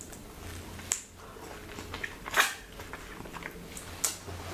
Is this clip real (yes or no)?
yes